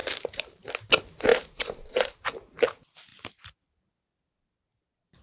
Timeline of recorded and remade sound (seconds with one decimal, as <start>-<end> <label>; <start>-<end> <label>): 0.0-0.7 remade; 0.7-1.3 recorded; 1.3-2.2 remade; 2.2-5.2 recorded